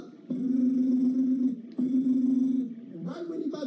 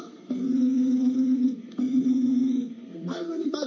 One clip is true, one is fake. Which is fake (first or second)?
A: second